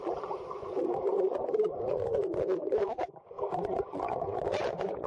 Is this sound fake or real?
fake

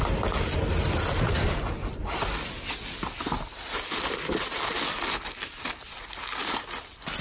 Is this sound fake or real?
real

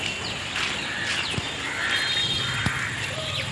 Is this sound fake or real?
real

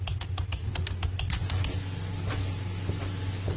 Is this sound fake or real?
real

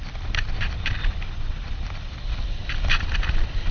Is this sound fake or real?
real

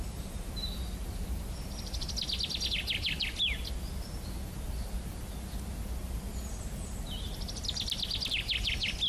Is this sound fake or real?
real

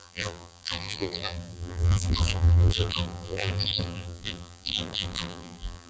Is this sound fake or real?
fake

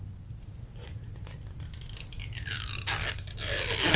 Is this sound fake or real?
real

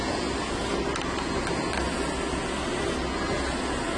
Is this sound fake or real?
real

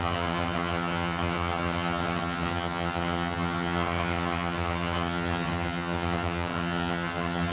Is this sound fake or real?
fake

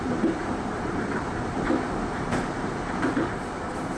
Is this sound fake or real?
fake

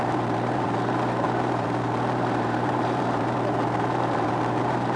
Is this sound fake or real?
fake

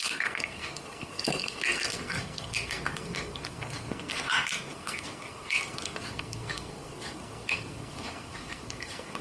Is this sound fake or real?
fake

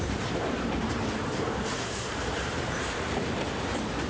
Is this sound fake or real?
fake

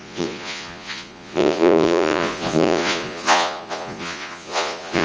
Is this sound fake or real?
fake